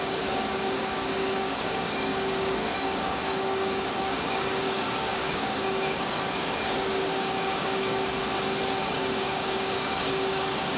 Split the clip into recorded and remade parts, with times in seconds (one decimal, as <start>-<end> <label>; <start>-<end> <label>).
0.0-8.2 remade; 8.2-8.8 recorded; 8.8-10.8 remade